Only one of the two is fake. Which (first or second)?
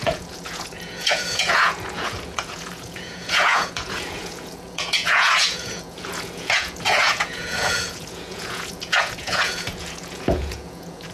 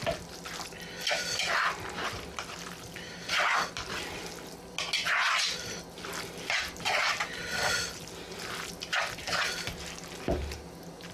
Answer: first